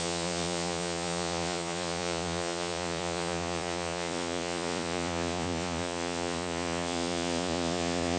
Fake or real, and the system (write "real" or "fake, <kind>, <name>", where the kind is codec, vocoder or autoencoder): fake, vocoder, Vocos